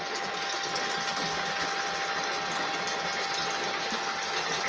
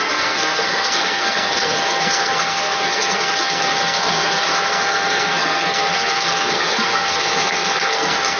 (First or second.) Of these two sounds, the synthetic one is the second